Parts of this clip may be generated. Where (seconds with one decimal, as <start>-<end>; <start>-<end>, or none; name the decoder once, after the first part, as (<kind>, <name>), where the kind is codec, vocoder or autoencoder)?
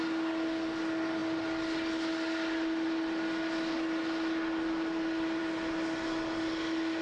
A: none